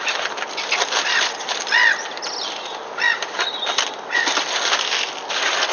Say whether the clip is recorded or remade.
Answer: recorded